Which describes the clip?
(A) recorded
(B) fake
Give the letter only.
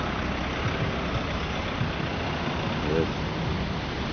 A